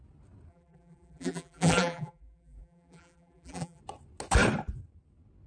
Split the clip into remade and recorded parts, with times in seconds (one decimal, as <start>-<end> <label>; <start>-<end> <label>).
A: 0.0-0.5 recorded; 0.5-3.8 remade; 3.8-5.5 recorded